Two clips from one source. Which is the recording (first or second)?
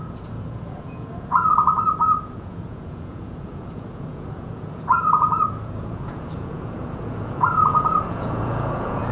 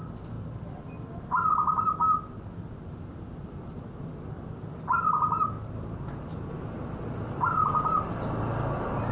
second